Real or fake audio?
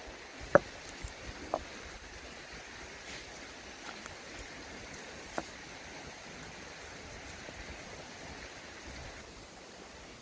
real